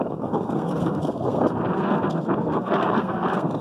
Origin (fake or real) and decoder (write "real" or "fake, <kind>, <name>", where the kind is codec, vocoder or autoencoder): fake, codec, SNAC